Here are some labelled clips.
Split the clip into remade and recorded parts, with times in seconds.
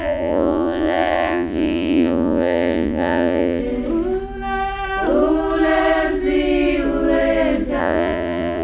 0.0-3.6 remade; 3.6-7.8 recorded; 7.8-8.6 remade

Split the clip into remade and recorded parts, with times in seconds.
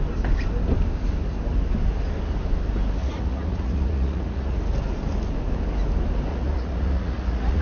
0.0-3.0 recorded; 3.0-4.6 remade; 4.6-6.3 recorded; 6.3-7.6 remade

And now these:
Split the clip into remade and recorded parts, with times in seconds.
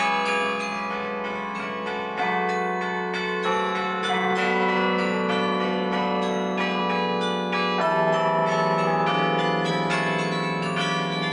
0.0-3.5 recorded; 3.5-6.8 remade; 6.8-11.3 recorded